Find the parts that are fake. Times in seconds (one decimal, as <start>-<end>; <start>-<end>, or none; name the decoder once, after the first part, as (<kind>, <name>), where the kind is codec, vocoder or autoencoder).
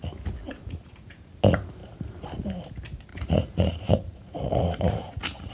0.4-1.0 (vocoder, Vocos); 3.1-5.5